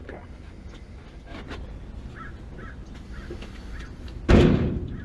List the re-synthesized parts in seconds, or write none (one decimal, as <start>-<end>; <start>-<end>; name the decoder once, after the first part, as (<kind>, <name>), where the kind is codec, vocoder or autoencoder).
none